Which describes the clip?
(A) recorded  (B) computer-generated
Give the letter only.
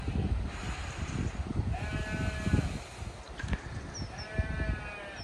A